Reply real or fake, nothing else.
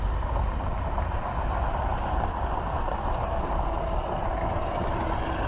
real